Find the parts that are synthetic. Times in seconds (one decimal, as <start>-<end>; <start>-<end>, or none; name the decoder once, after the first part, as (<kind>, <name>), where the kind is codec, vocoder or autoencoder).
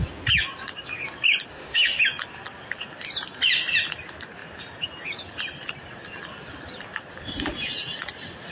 1.5-2.0 (autoencoder, DAC-VAE)